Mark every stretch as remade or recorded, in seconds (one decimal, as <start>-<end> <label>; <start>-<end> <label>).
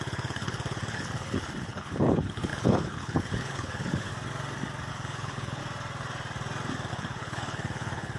0.0-4.1 remade; 4.1-4.9 recorded; 4.9-5.6 remade; 5.6-6.9 recorded; 6.9-8.2 remade